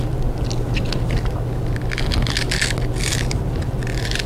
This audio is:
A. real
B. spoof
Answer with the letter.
A